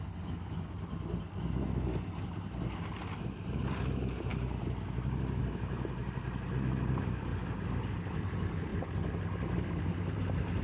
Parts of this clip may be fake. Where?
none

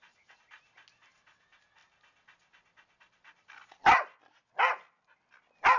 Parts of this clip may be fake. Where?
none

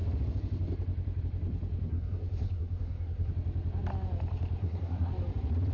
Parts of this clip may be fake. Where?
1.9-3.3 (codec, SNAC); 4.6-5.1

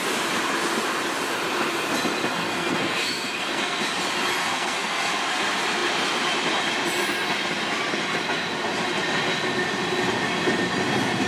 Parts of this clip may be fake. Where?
2.3-3.8 (codec, SNAC); 4.4-5.2

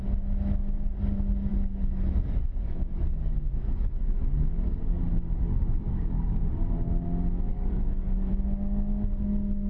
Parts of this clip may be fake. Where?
1.5-6.4 (codec, DAC); 7.5-8.3